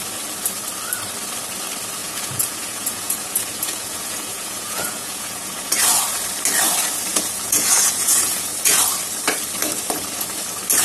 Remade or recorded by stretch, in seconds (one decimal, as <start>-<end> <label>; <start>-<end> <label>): 0.0-2.0 recorded; 2.0-5.7 remade; 5.7-7.1 recorded; 7.1-8.8 remade; 8.8-10.8 recorded